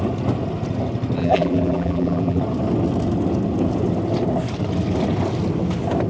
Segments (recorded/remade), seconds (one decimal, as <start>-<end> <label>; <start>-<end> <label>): 0.0-1.2 recorded; 1.2-2.4 remade; 2.4-6.1 recorded